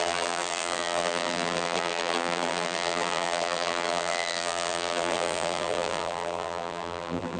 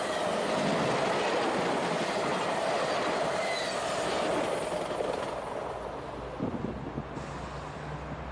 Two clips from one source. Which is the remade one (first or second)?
first